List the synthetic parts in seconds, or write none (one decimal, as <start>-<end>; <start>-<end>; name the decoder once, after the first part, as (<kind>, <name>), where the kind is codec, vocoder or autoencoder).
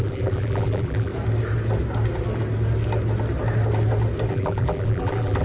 0.0-1.1 (vocoder, BigVGAN v2); 4.3-5.4